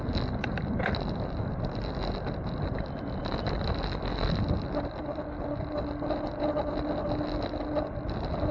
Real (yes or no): yes